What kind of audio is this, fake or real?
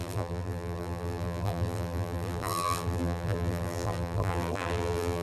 fake